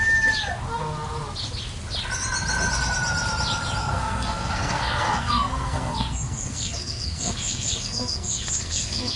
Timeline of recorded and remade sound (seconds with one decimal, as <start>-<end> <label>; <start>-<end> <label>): 0.0-3.8 recorded; 3.8-9.2 remade